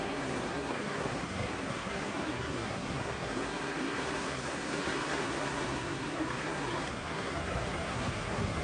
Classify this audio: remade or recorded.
remade